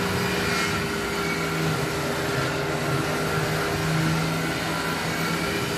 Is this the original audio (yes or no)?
yes